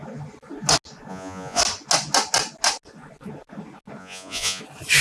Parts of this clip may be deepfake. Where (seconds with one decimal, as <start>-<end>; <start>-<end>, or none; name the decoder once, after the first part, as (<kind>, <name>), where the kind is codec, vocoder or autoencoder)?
1.1-1.6 (vocoder, Vocos); 4.0-4.6